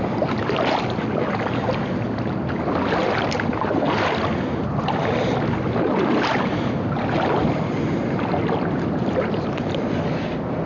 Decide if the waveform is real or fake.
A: real